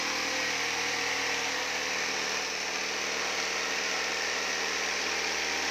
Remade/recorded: remade